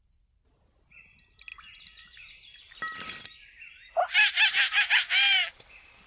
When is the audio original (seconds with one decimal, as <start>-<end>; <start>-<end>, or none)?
0.0-6.1